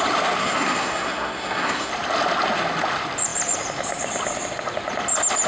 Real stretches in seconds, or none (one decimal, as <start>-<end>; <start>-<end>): 0.0-0.4; 1.9-5.5